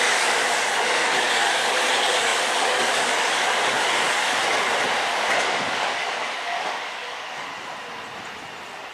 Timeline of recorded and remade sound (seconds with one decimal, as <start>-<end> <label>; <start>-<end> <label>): 0.0-4.4 remade; 4.4-5.4 recorded; 5.4-7.5 remade; 7.5-8.9 recorded